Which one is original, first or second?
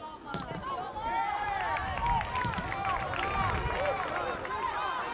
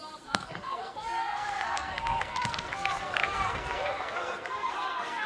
first